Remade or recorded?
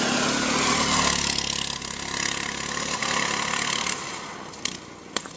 recorded